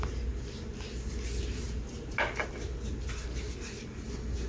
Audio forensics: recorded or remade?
recorded